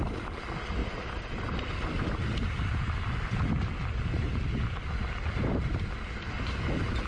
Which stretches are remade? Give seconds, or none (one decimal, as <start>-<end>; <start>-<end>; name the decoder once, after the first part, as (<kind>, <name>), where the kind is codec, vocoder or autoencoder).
0.8-5.0 (vocoder, BigVGAN v2)